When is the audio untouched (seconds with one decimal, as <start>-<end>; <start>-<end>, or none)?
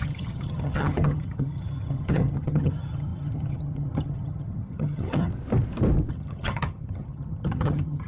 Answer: 5.3-6.1